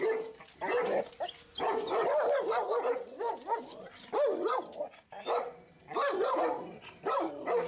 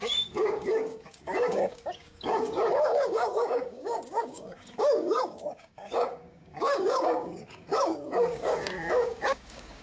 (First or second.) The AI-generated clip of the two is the second